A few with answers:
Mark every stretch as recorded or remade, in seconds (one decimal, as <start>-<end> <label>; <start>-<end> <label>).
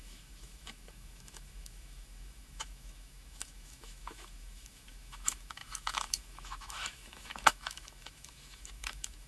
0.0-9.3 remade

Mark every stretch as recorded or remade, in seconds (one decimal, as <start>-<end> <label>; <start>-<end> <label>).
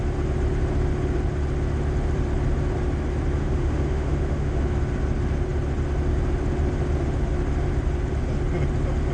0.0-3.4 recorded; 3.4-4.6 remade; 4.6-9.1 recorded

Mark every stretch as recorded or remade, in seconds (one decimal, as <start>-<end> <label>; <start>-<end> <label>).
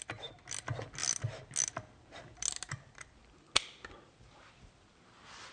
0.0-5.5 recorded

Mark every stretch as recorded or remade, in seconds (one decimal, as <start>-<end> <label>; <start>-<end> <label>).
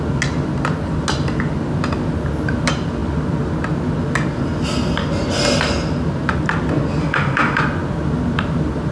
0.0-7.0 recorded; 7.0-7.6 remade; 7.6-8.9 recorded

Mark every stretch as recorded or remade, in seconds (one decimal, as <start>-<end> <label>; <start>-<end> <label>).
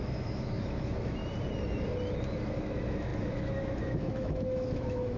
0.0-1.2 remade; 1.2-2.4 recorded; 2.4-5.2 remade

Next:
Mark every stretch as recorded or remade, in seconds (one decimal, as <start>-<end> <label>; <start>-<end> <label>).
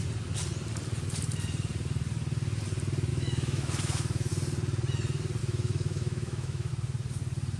0.0-3.1 recorded; 3.1-4.3 remade; 4.3-5.4 recorded; 5.4-6.7 remade; 6.7-7.6 recorded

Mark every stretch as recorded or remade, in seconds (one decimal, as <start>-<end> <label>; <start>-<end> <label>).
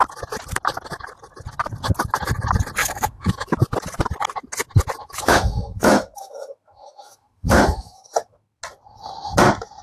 0.0-2.8 recorded; 2.8-3.6 remade; 3.6-5.0 recorded; 5.0-8.6 remade; 8.6-9.8 recorded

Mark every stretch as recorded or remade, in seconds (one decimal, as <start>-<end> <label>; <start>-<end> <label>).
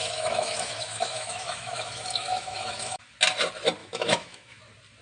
0.0-3.0 remade; 3.0-3.8 recorded; 3.8-4.6 remade; 4.6-5.0 recorded